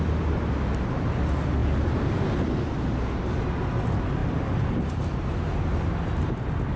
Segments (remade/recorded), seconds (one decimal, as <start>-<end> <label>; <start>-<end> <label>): 0.0-1.6 recorded; 1.6-2.5 remade; 2.5-4.2 recorded; 4.2-4.9 remade; 4.9-6.8 recorded